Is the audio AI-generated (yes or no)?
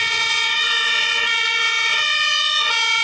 yes